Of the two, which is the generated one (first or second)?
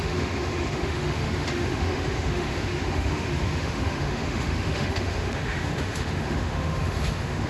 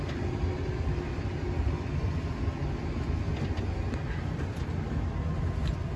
first